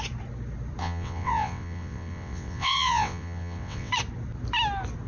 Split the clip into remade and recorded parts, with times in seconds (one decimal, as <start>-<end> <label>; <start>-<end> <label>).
0.0-0.8 recorded; 0.8-3.9 remade; 3.9-5.1 recorded